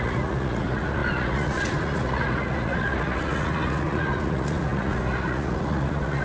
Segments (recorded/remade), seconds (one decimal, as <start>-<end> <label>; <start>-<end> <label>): 0.0-6.2 remade